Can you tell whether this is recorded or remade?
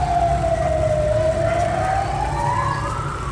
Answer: recorded